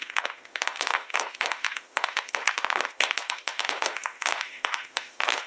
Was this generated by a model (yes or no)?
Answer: yes